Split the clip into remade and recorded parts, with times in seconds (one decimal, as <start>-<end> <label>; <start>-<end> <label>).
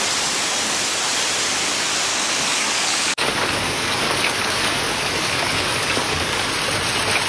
0.0-2.1 recorded; 2.1-6.5 remade; 6.5-7.3 recorded